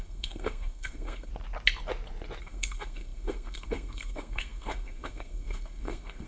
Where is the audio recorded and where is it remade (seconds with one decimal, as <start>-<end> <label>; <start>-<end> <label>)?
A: 0.0-1.3 remade; 1.3-2.4 recorded; 2.4-6.3 remade